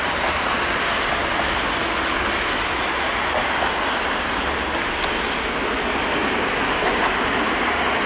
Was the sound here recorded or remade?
recorded